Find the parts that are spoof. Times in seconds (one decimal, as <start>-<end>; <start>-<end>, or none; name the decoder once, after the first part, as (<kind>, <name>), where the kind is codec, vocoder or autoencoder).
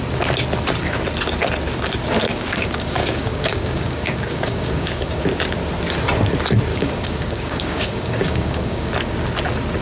2.3-5.2 (codec, DAC); 6.7-8.9